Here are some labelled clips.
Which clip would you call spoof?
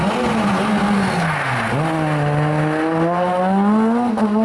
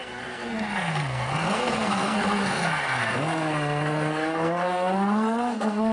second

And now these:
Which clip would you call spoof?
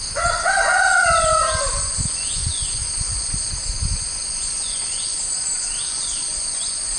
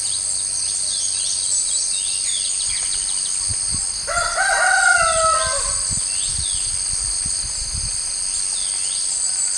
first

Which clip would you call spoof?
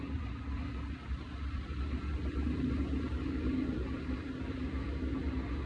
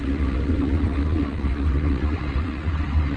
second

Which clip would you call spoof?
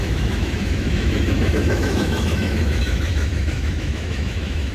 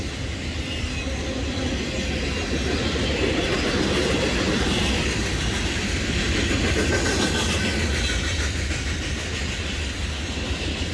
first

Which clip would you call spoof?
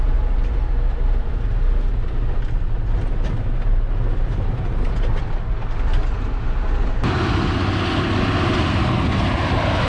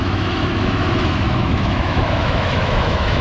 second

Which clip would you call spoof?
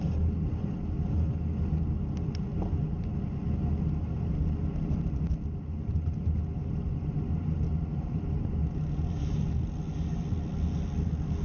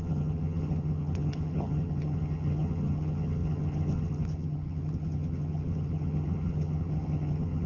second